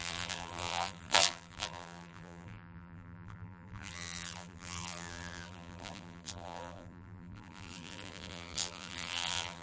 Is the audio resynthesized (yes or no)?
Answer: yes